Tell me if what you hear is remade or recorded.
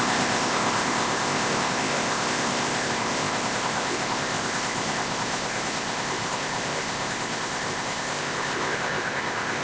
remade